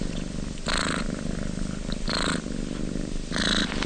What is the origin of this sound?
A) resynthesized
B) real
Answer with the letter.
B